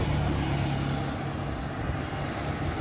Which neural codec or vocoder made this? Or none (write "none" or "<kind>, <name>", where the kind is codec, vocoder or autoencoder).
none